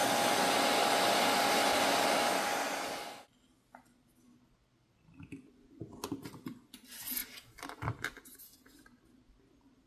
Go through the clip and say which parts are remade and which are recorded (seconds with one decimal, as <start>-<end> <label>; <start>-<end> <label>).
0.0-9.9 recorded